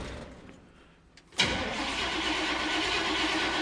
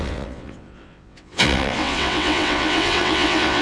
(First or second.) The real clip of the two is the first